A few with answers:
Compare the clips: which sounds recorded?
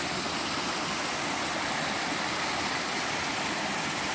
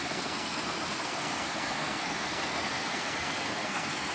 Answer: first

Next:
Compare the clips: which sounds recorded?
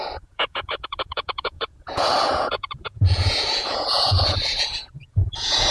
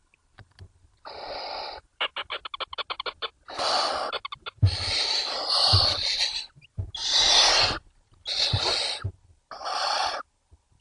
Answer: second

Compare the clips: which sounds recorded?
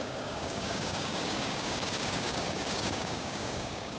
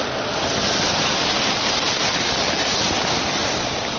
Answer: second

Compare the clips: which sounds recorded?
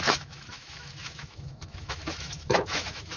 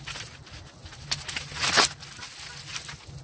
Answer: second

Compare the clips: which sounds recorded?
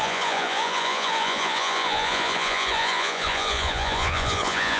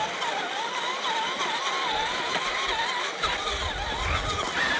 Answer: second